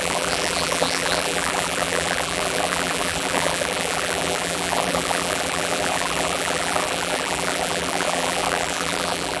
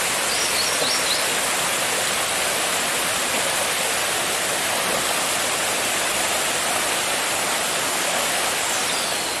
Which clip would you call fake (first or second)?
first